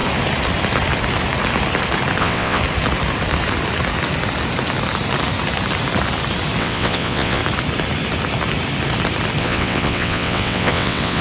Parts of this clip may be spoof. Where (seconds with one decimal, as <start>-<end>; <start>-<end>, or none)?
2.2-2.6; 6.6-7.4; 9.4-11.2